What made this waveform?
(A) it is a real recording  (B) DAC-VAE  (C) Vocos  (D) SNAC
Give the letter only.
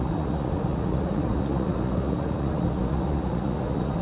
C